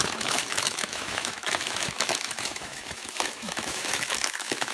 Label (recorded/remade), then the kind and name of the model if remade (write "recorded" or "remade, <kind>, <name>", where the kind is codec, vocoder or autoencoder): remade, autoencoder, DAC-VAE